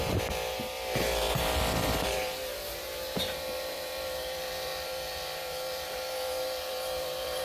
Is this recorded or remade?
remade